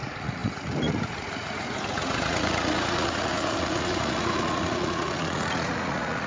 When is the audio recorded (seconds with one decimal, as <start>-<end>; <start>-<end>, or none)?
none

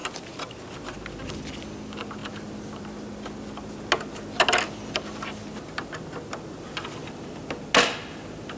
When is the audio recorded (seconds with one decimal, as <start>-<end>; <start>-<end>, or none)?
0.0-8.6

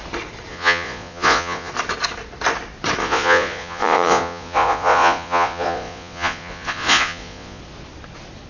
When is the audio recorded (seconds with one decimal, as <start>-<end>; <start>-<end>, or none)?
0.0-0.5; 1.7-3.0; 7.6-8.5

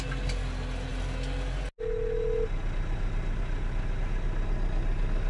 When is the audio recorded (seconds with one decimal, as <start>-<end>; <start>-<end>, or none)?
0.0-5.3